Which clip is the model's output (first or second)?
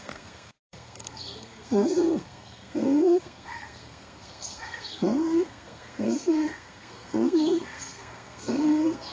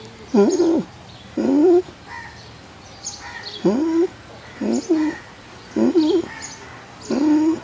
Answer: first